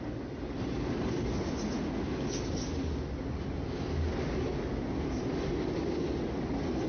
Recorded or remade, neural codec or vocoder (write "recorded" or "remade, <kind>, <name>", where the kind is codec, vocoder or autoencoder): recorded